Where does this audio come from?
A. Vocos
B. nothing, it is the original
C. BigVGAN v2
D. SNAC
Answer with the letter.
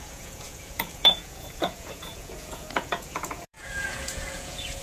A